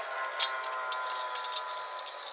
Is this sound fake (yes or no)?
no